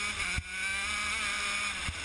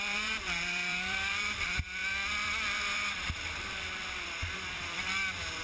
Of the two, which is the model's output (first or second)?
second